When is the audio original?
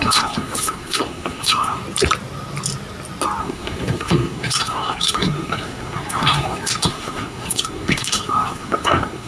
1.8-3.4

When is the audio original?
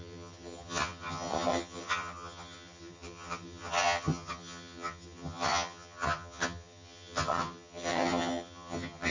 none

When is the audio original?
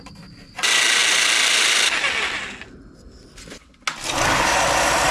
0.0-5.1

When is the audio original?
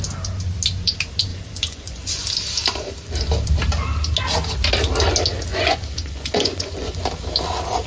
0.0-1.3; 2.2-5.5; 7.0-7.9